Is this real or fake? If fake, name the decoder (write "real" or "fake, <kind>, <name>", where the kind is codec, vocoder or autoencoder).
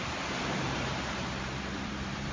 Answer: fake, vocoder, BigVGAN v2